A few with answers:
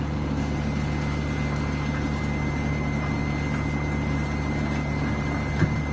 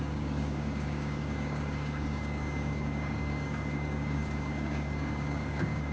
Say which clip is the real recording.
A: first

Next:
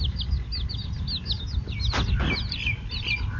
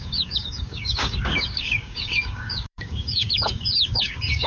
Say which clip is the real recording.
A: first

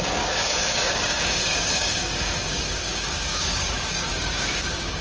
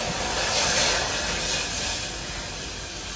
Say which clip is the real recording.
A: second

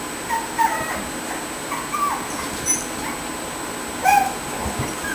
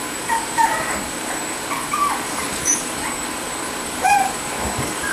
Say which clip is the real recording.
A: first